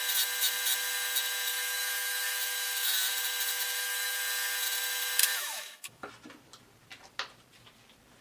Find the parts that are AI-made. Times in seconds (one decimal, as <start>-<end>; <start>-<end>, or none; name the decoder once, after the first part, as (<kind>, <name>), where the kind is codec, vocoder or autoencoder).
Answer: 1.5-3.0 (autoencoder, DAC-VAE); 3.5-4.2; 5.2-6.1